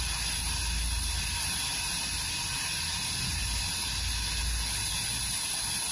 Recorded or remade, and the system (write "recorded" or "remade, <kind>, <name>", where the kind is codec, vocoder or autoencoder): recorded